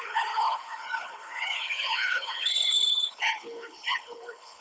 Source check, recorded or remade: remade